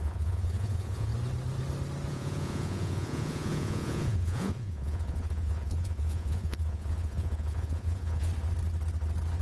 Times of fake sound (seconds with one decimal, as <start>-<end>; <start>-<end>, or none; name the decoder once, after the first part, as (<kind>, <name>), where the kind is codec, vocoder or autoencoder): 0.0-1.1 (vocoder, Vocos); 2.1-8.3